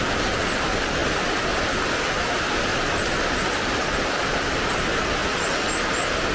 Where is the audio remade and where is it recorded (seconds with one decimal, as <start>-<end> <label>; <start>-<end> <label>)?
0.0-2.7 recorded; 2.7-4.7 remade; 4.7-5.2 recorded; 5.2-6.3 remade